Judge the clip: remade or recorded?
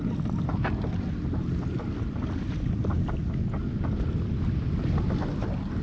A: recorded